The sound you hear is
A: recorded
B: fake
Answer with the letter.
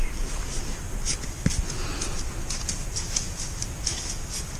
A